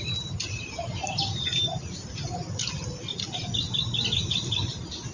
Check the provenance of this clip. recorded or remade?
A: recorded